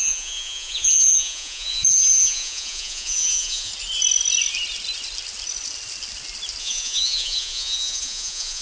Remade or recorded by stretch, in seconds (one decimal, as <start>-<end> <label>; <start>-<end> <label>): 0.0-3.7 remade; 3.7-6.6 recorded; 6.6-8.6 remade